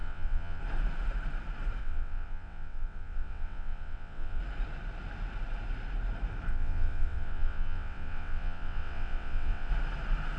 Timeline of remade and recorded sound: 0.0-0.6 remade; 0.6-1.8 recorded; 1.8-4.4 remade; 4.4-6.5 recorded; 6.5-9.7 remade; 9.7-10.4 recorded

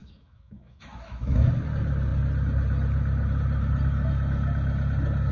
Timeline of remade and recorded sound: 0.0-1.5 remade; 1.5-5.3 recorded

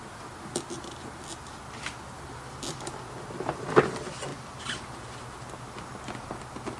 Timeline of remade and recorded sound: 0.0-6.8 recorded